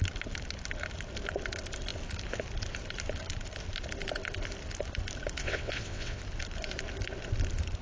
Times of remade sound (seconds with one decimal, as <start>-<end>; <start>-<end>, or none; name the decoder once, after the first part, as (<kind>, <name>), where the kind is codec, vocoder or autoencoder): 5.4-6.2 (vocoder, WaveNeXt)